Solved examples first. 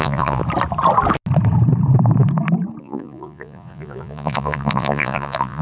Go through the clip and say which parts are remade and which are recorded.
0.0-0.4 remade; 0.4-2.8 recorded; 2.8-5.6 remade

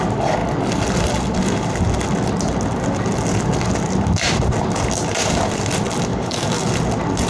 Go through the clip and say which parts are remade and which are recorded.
0.0-6.1 recorded; 6.1-6.7 remade; 6.7-7.3 recorded

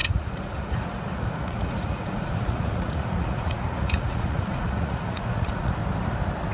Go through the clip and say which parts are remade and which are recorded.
0.0-5.8 remade; 5.8-6.5 recorded

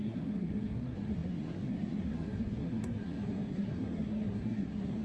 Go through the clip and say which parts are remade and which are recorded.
0.0-5.0 remade

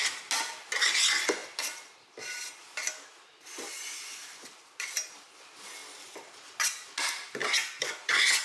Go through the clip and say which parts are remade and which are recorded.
0.0-7.4 recorded; 7.4-8.4 remade

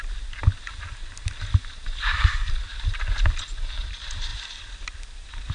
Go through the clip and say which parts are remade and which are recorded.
0.0-2.0 recorded; 2.0-2.5 remade; 2.5-5.5 recorded